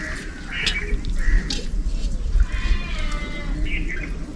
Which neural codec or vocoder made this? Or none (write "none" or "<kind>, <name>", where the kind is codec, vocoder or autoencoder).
none